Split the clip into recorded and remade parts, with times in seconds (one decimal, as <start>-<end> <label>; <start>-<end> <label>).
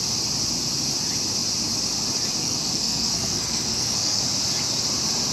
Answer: 0.0-2.4 recorded; 2.4-4.2 remade; 4.2-5.3 recorded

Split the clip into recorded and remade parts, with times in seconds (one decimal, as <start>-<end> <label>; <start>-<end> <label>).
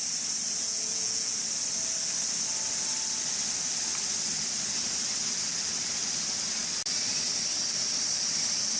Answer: 0.0-0.6 recorded; 0.6-1.3 remade; 1.3-8.8 recorded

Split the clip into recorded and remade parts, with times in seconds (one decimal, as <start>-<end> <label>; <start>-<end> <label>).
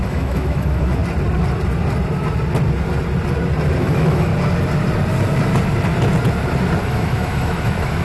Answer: 0.0-1.0 remade; 1.0-3.8 recorded; 3.8-4.3 remade; 4.3-6.8 recorded; 6.8-8.0 remade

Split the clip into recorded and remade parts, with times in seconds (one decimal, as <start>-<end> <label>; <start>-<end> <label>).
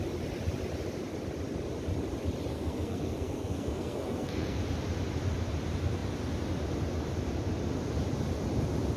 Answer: 0.0-2.5 recorded; 2.5-4.6 remade; 4.6-9.0 recorded